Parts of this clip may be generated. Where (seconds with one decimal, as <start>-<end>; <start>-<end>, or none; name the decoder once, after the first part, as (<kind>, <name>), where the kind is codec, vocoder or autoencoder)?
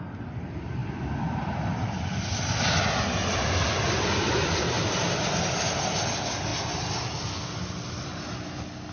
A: none